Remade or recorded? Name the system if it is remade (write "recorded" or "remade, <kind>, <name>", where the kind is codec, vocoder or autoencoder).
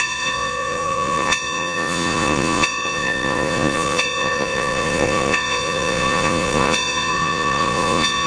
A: remade, vocoder, Vocos